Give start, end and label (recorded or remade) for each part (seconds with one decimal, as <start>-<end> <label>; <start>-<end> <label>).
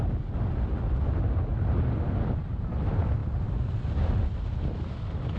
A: 0.0-5.4 recorded